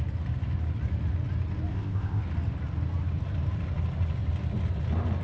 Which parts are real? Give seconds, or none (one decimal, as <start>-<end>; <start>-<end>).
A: 0.0-1.7; 2.2-5.2